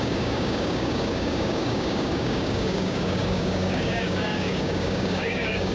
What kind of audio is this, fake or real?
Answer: fake